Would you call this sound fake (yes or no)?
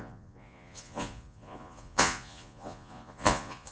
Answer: yes